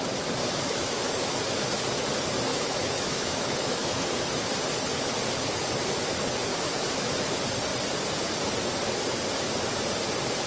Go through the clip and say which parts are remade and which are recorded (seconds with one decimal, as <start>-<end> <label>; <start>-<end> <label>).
0.0-0.4 recorded; 0.4-1.4 remade; 1.4-2.5 recorded; 2.5-4.0 remade; 4.0-6.5 recorded; 6.5-7.1 remade; 7.1-10.5 recorded